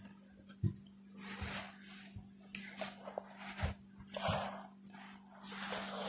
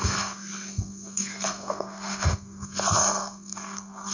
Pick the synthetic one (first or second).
second